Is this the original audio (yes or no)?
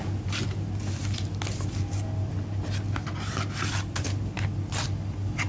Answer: yes